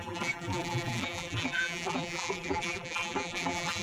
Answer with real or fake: fake